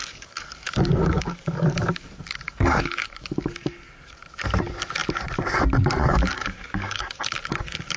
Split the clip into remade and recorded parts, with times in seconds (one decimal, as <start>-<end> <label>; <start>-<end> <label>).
0.0-3.9 remade; 3.9-6.0 recorded; 6.0-8.0 remade